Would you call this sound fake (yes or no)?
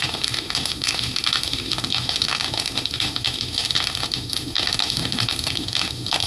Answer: yes